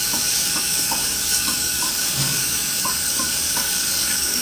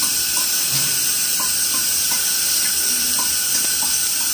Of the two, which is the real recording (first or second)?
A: second